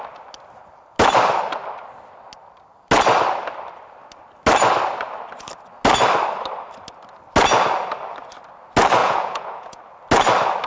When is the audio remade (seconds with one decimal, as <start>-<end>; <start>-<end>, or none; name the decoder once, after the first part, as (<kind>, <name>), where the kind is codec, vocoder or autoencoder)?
9.0-9.8 (vocoder, Vocos)